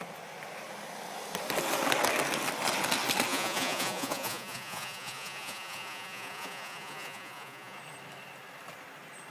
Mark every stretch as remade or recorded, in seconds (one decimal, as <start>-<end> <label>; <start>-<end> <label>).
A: 0.0-3.3 recorded; 3.3-7.8 remade; 7.8-9.3 recorded